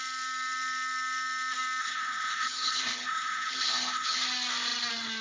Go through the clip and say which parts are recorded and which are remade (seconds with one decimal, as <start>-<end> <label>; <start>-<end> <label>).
0.0-1.8 recorded; 1.8-4.2 remade; 4.2-5.2 recorded